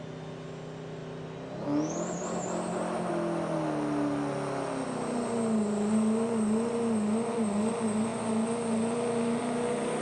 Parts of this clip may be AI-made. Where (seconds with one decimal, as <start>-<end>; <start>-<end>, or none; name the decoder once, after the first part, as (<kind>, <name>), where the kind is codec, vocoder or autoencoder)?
none